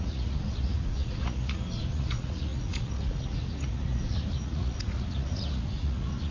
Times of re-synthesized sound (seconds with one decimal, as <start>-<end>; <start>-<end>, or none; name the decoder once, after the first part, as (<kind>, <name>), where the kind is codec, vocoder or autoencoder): 0.0-6.3 (vocoder, Vocos)